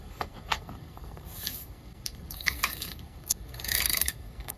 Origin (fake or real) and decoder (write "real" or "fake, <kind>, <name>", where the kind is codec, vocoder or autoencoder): fake, codec, SNAC